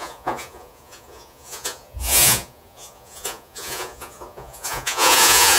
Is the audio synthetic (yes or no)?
yes